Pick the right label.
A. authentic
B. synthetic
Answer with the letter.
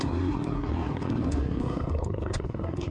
B